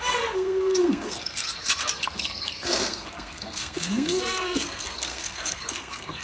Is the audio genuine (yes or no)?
no